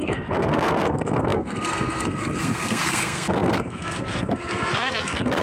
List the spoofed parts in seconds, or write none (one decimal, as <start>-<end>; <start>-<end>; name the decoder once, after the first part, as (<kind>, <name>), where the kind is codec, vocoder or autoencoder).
0.0-5.4 (codec, SNAC)